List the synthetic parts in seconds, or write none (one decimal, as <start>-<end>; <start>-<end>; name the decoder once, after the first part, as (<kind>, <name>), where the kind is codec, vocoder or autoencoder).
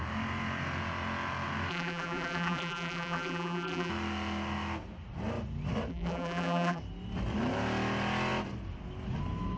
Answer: 1.7-3.9 (vocoder, BigVGAN v2); 5.9-6.8